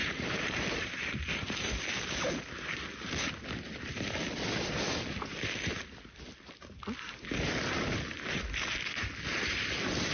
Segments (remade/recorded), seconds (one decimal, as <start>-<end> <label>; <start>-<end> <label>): 0.0-1.7 remade; 1.7-10.1 recorded